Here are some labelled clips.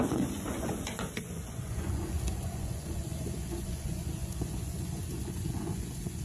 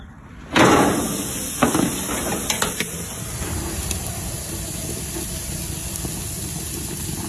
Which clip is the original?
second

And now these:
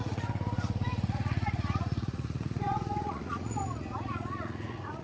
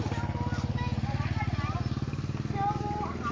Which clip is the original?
second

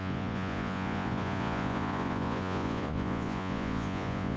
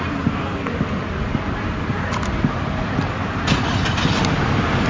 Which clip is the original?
second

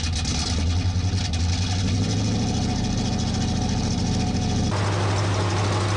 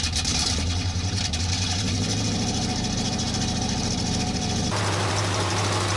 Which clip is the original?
first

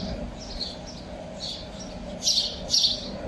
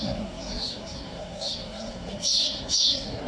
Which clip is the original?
first